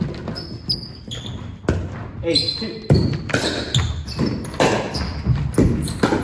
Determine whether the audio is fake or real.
real